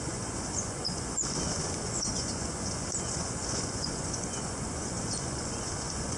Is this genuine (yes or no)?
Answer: no